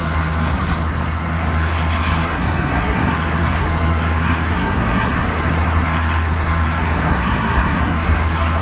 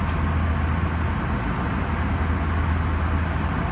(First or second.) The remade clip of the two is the first